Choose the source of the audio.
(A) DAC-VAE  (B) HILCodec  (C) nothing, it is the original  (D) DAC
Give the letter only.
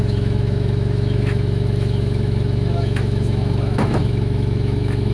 A